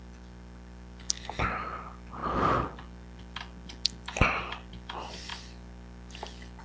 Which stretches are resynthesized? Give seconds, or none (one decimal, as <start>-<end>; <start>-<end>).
none